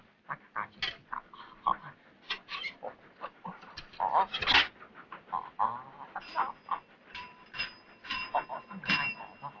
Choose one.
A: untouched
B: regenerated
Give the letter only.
A